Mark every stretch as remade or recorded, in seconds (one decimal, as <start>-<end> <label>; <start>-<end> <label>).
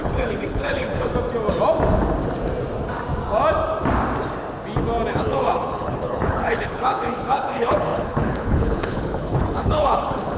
0.0-1.1 remade; 1.1-5.1 recorded; 5.1-10.4 remade